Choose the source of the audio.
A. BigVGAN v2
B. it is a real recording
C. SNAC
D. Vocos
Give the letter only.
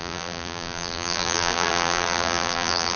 A